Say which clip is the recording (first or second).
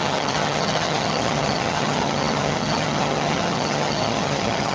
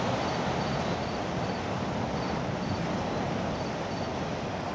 second